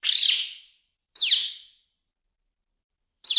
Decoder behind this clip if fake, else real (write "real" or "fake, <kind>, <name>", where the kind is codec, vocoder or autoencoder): fake, vocoder, BigVGAN v2